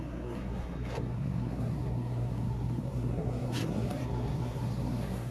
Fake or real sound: fake